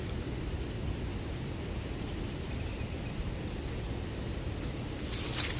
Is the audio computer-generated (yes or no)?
no